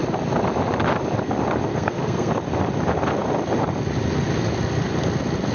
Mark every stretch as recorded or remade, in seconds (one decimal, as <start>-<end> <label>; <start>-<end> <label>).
0.0-1.7 recorded; 1.7-2.3 remade; 2.3-5.5 recorded